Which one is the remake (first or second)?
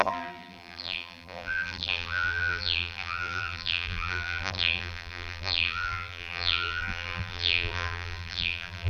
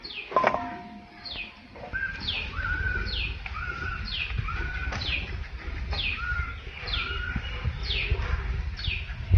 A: first